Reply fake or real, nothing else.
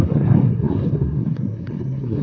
fake